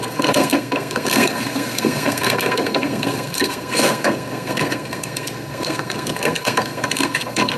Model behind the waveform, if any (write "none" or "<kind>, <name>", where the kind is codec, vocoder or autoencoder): codec, SNAC